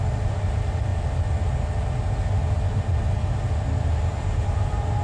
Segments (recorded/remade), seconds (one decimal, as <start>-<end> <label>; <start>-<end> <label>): 0.0-0.9 remade; 0.9-3.9 recorded; 3.9-5.0 remade

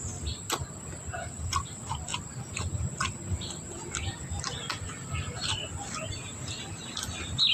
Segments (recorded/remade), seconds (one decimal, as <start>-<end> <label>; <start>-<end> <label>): 0.0-7.5 recorded

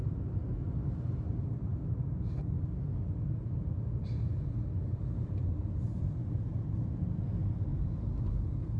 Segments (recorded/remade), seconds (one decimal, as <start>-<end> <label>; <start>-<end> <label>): 0.0-5.9 recorded; 5.9-6.7 remade; 6.7-7.7 recorded; 7.7-8.3 remade; 8.3-8.8 recorded

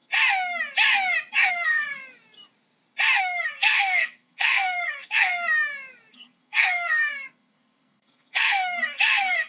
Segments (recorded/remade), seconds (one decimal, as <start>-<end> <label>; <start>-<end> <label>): 0.0-1.5 recorded; 1.5-2.0 remade; 2.0-3.2 recorded; 3.2-5.3 remade; 5.3-6.1 recorded; 6.1-9.5 remade

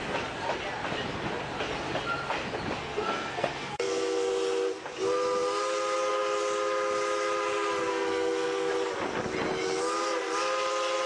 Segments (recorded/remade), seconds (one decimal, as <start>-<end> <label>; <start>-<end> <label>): 0.0-2.8 recorded; 2.8-4.3 remade; 4.3-7.9 recorded; 7.9-8.7 remade; 8.7-11.1 recorded